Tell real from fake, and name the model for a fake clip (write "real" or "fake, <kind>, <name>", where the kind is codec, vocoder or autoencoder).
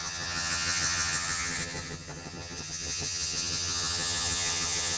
fake, vocoder, HiFi-GAN